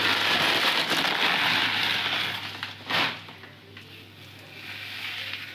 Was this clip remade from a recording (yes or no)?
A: no